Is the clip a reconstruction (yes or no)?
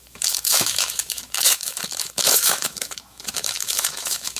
yes